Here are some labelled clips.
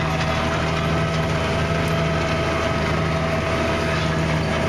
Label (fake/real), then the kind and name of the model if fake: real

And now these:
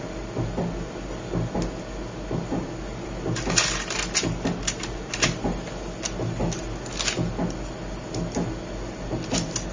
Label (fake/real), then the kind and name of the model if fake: real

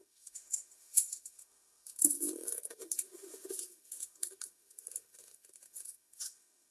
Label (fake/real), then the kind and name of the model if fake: fake, autoencoder, DAC-VAE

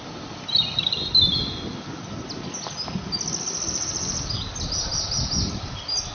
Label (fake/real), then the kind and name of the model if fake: real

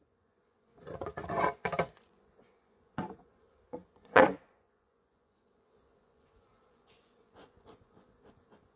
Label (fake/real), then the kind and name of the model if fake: fake, vocoder, Vocos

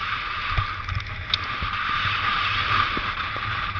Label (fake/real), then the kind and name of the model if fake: fake, vocoder, BigVGAN v2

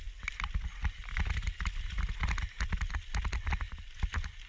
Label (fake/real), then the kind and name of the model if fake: real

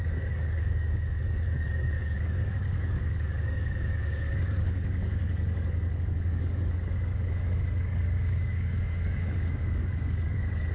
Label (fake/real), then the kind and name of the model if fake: fake, codec, DAC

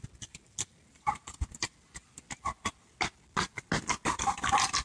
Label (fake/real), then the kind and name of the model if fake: real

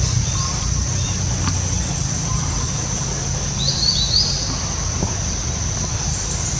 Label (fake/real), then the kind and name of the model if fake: real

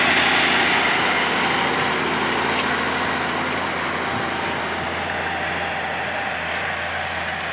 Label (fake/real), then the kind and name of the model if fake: real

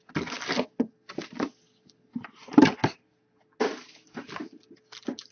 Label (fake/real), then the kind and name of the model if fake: real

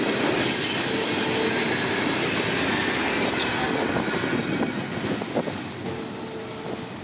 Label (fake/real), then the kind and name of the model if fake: real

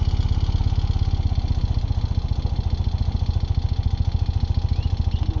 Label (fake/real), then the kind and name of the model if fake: real